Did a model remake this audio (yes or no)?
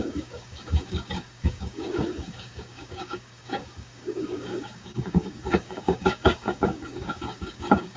yes